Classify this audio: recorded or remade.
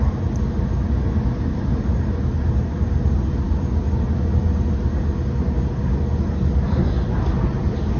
recorded